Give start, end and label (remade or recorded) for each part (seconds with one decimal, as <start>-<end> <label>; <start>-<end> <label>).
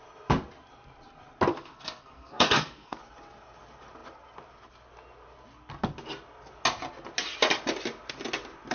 0.0-1.5 recorded; 1.5-3.0 remade; 3.0-8.7 recorded